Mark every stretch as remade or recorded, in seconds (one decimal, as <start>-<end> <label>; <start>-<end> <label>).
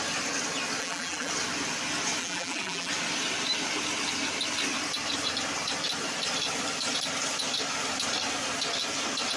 0.0-0.8 recorded; 0.8-1.3 remade; 1.3-2.2 recorded; 2.2-2.9 remade; 2.9-9.4 recorded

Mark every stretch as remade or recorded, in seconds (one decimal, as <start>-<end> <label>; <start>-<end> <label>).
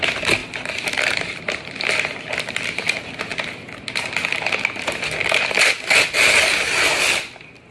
0.0-0.4 recorded; 0.4-1.9 remade; 1.9-3.3 recorded; 3.3-6.0 remade; 6.0-7.7 recorded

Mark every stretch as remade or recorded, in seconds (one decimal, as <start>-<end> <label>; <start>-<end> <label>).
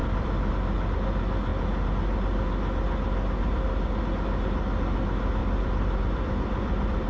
0.0-0.5 remade; 0.5-5.4 recorded; 5.4-7.1 remade